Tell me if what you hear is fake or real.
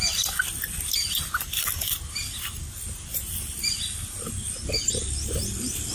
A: real